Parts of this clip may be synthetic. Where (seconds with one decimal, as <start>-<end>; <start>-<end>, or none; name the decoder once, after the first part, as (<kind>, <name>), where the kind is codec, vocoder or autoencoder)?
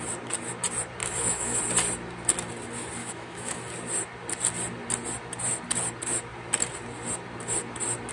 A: 1.0-1.6 (autoencoder, DAC-VAE); 3.0-3.6